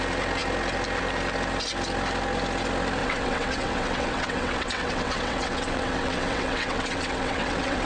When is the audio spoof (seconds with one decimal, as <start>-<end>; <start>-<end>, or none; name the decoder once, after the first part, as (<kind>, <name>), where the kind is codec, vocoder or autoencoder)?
3.0-7.9 (vocoder, WaveNeXt)